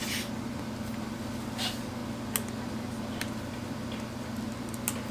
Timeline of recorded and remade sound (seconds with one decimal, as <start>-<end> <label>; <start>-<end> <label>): 0.0-5.1 recorded